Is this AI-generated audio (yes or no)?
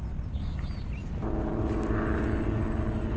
no